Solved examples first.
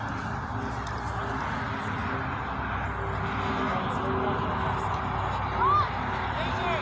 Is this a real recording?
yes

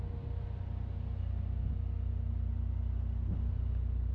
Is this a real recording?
yes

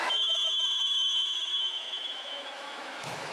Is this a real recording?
no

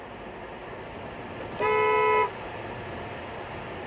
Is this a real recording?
yes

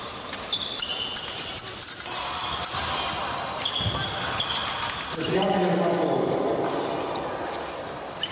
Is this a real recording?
yes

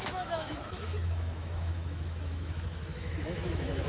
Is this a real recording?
no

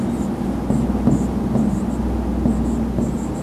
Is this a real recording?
yes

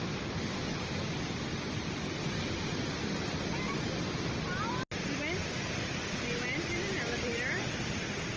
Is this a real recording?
yes